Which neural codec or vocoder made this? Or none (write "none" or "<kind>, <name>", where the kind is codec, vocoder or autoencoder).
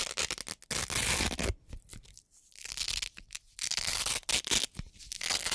none